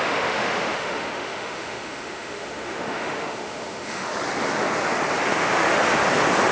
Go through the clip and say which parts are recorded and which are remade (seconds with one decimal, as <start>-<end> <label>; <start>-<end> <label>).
0.0-4.1 remade; 4.1-5.3 recorded; 5.3-5.8 remade; 5.8-6.5 recorded